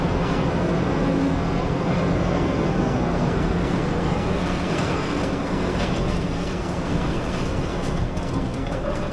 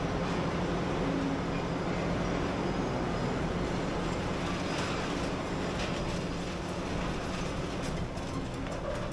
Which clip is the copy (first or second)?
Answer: first